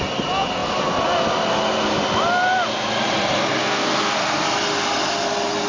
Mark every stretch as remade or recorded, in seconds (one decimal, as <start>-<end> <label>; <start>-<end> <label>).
0.0-3.6 recorded; 3.6-4.1 remade; 4.1-5.7 recorded